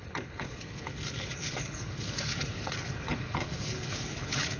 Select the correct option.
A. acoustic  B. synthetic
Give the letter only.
B